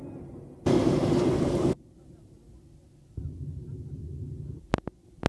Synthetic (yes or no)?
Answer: no